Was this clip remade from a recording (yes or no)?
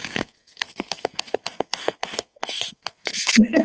yes